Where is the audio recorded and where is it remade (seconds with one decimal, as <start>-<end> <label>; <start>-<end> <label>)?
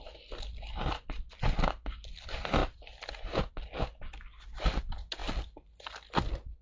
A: 0.0-6.6 recorded